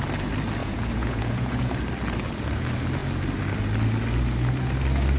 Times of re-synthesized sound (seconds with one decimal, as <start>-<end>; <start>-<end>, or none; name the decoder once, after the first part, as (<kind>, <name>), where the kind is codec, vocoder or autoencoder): 0.6-1.7 (vocoder, Vocos)